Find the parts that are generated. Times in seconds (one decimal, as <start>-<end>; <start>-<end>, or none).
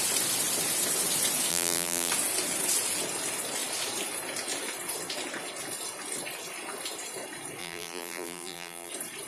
1.5-2.1; 7.6-8.9